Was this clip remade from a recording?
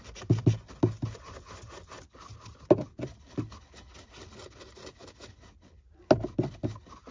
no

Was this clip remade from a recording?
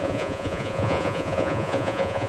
yes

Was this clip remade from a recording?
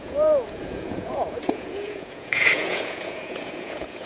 yes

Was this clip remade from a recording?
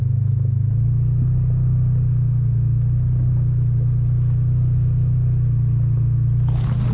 no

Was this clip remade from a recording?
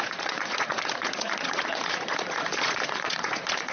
yes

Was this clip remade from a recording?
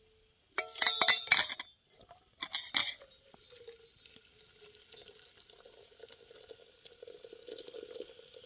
no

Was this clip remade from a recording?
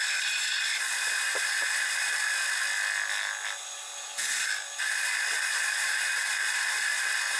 no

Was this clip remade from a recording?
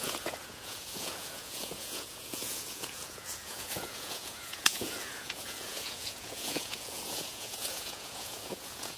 yes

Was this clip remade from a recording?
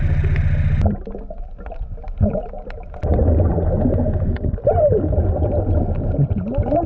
no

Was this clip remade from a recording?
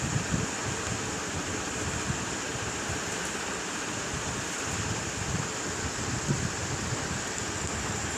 no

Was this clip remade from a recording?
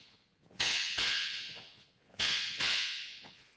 yes